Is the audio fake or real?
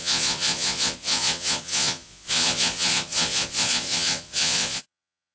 fake